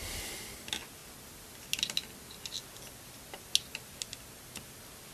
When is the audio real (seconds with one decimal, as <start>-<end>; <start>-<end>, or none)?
0.0-5.1